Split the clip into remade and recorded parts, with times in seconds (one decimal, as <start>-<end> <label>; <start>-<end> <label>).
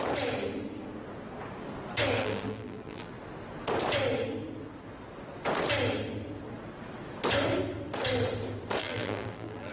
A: 0.0-2.2 recorded; 2.2-3.1 remade; 3.1-8.8 recorded; 8.8-9.7 remade